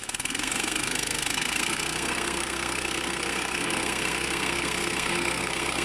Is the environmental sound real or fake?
fake